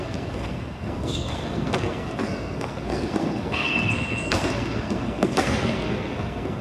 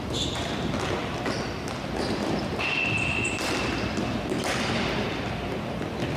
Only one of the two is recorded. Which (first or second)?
second